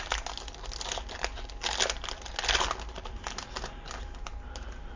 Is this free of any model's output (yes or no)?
yes